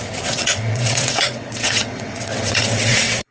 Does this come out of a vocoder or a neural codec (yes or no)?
yes